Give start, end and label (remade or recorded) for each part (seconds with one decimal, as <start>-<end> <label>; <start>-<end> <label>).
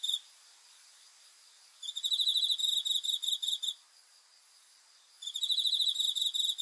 0.0-6.6 recorded